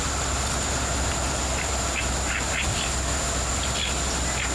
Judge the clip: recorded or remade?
recorded